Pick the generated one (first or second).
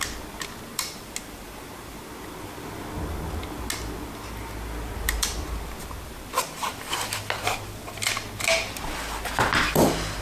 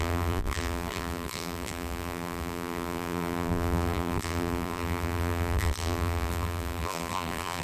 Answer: second